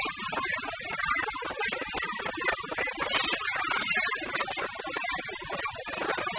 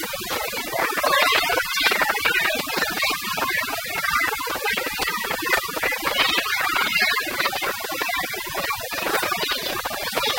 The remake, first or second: second